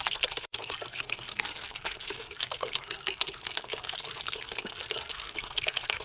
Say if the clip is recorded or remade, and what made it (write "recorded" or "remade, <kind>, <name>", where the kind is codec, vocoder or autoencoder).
remade, codec, SNAC